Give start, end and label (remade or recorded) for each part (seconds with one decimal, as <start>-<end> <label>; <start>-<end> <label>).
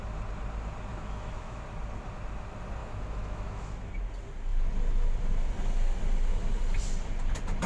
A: 0.0-0.9 recorded; 0.9-1.6 remade; 1.6-2.8 recorded; 2.8-3.9 remade; 3.9-7.7 recorded